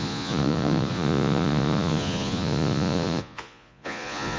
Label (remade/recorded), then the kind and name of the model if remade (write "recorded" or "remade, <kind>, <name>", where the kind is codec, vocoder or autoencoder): remade, vocoder, Vocos